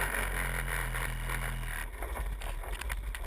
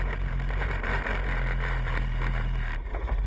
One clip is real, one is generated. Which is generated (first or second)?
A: second